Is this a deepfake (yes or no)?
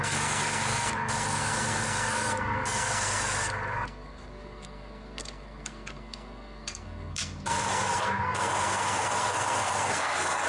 yes